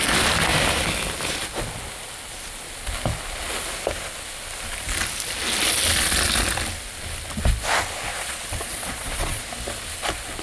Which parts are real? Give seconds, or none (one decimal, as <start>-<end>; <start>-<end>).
0.0-8.1; 9.5-10.4